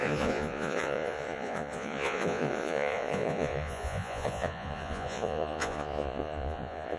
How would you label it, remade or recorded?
remade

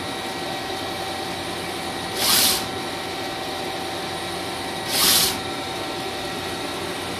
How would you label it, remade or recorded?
recorded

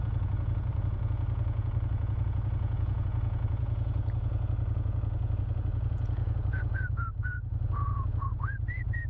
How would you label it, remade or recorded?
remade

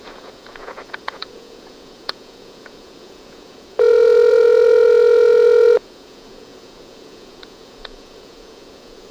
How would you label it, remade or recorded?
remade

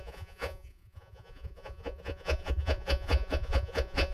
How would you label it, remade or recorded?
remade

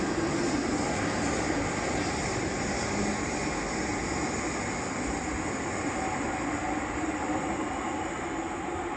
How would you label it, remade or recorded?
recorded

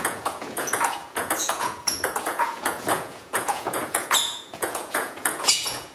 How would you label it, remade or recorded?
remade